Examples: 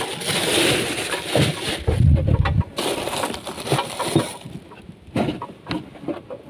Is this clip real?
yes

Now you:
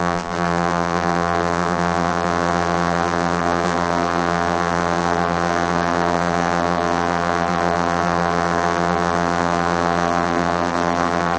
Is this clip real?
no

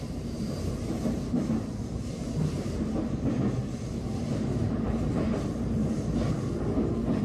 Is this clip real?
no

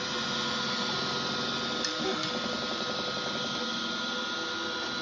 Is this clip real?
yes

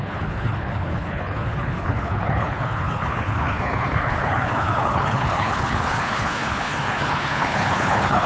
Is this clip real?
no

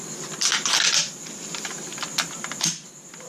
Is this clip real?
yes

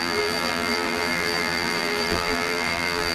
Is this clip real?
no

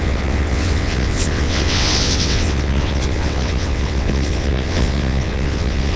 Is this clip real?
no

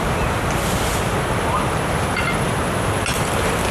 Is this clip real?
yes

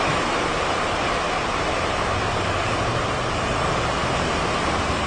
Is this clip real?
no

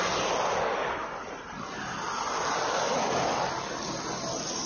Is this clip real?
yes